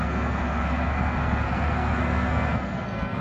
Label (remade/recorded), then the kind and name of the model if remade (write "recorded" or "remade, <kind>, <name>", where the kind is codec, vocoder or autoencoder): remade, codec, SNAC